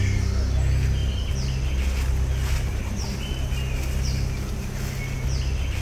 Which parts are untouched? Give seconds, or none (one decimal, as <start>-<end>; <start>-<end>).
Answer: 0.0-5.8